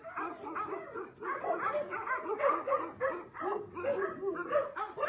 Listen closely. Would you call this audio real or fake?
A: real